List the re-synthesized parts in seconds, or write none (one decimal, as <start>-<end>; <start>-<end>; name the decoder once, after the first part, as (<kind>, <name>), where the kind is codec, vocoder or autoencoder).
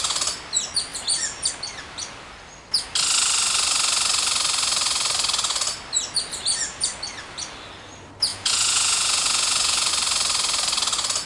8.3-9.9 (vocoder, Vocos)